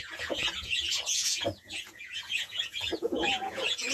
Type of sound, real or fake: fake